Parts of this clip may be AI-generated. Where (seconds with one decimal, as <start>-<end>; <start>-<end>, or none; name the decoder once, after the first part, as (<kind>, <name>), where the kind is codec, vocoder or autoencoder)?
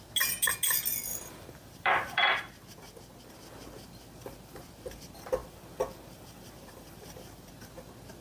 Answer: 1.1-2.2 (vocoder, BigVGAN v2); 5.4-7.5